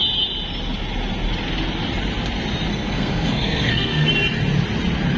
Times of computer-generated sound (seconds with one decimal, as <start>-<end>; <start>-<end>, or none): 2.7-4.1